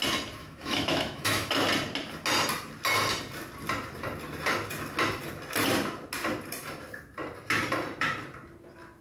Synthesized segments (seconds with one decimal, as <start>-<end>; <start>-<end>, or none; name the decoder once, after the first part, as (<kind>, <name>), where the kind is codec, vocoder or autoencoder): 0.4-1.5 (autoencoder, DAC-VAE)